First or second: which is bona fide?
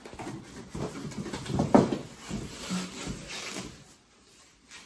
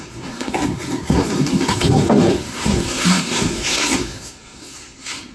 first